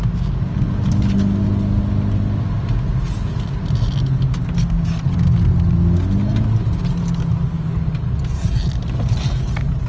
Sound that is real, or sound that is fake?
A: real